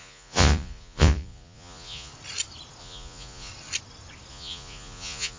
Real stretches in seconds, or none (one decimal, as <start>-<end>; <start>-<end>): 2.1-2.8; 3.5-4.3